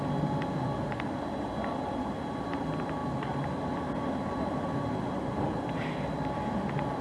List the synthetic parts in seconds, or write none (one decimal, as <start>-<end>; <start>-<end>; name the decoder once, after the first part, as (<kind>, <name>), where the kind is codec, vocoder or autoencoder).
none